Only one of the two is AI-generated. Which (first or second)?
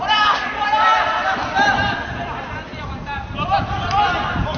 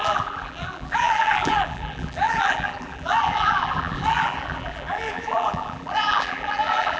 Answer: second